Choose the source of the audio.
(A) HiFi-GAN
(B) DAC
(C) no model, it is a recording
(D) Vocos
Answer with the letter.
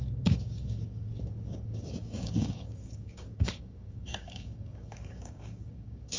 B